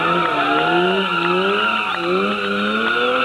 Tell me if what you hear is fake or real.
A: real